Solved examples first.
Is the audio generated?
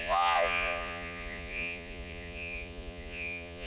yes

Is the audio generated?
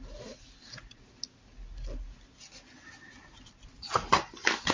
no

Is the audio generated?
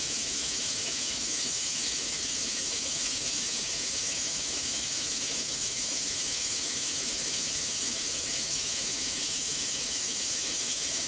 yes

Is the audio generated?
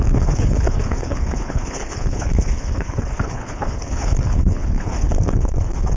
yes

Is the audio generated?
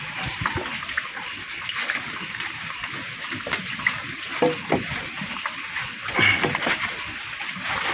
yes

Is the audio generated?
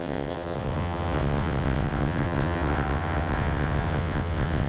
yes